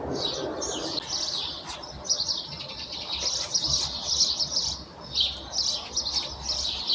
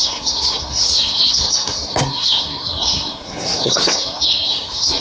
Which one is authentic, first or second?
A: first